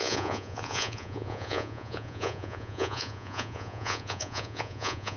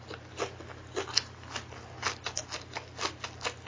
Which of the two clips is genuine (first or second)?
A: second